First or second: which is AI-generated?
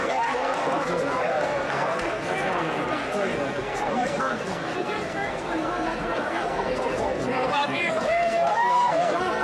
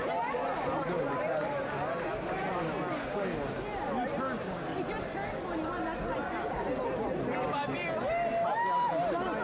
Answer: first